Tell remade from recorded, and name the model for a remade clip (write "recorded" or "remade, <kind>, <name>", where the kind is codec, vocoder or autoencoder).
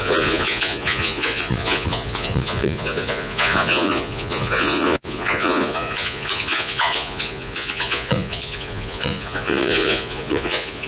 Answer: remade, vocoder, Vocos